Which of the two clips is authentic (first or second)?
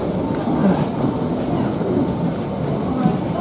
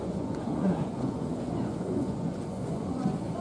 first